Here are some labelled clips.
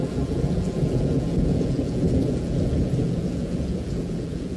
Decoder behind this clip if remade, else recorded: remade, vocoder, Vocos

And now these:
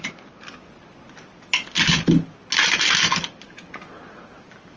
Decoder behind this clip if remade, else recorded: recorded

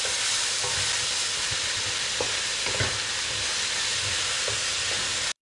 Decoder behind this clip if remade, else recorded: recorded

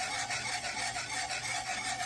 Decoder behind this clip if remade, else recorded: recorded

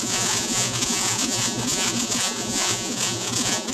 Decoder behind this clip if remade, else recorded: remade, vocoder, Vocos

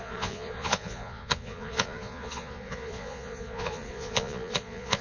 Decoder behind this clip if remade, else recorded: remade, vocoder, Vocos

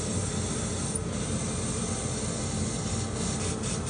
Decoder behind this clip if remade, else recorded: recorded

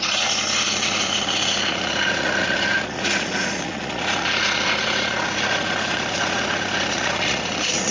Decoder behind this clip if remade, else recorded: remade, vocoder, Vocos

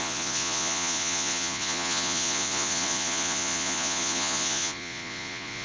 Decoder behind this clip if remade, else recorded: remade, vocoder, Vocos